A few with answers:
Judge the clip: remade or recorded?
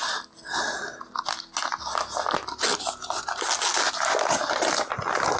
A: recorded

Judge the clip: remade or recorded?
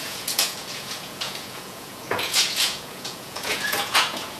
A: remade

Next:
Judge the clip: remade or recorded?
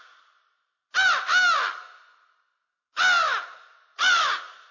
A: recorded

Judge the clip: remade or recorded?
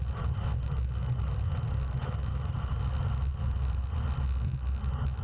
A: recorded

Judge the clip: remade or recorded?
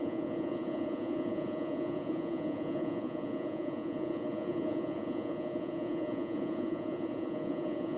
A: remade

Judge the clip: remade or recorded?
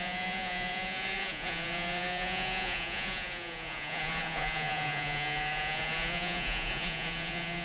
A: remade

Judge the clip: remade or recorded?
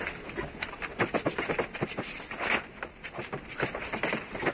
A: recorded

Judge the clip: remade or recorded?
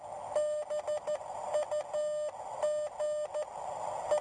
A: recorded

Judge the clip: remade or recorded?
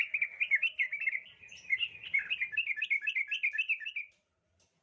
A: recorded